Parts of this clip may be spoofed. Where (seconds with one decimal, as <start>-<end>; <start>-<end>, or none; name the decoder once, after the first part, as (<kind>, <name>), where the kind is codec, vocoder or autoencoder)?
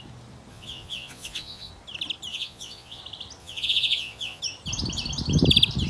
0.5-1.7 (vocoder, Vocos); 2.3-3.0; 3.4-4.4